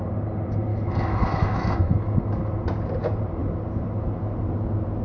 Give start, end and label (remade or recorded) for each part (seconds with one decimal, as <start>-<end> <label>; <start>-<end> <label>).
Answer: 0.0-0.7 recorded; 0.7-2.2 remade; 2.2-5.0 recorded